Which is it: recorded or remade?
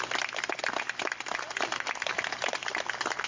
recorded